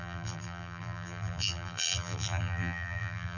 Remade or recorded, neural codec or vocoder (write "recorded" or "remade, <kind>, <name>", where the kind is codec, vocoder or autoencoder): remade, vocoder, BigVGAN v2